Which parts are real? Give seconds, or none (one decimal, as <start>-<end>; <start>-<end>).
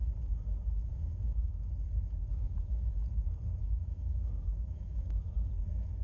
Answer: 0.0-0.9; 1.7-2.3; 2.9-3.6; 5.5-6.0